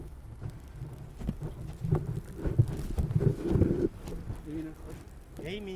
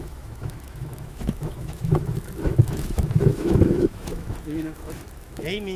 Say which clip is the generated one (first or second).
second